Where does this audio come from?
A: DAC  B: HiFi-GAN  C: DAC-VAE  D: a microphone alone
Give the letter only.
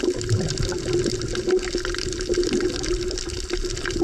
D